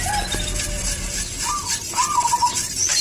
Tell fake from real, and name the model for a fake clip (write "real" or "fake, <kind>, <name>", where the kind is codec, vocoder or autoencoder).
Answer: real